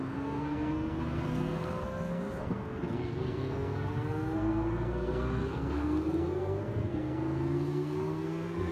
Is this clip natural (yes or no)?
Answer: no